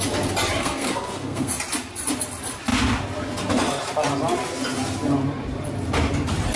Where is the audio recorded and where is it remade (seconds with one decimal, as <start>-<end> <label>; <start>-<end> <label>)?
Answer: 0.0-0.6 recorded; 0.6-1.5 remade; 1.5-6.6 recorded